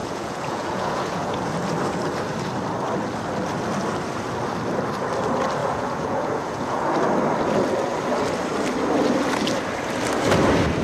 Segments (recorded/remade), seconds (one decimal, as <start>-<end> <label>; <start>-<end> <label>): 0.0-1.4 remade; 1.4-5.6 recorded; 5.6-6.9 remade; 6.9-10.8 recorded